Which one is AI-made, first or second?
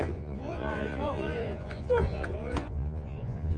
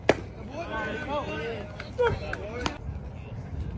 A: first